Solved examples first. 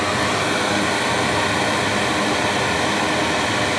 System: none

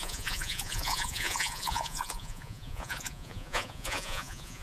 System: vocoder, Vocos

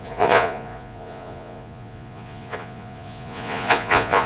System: vocoder, Vocos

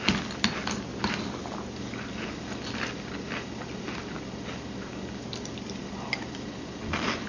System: none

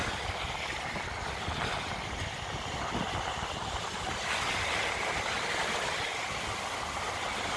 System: none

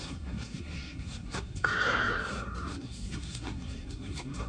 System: codec, SNAC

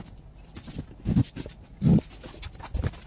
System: none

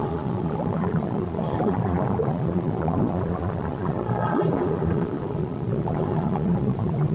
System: vocoder, Vocos